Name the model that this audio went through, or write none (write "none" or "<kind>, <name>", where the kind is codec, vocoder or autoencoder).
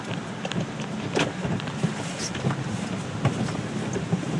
none